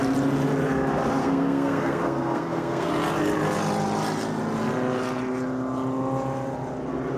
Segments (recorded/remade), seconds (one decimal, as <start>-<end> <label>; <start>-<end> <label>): 0.0-1.2 recorded; 1.2-2.9 remade; 2.9-7.2 recorded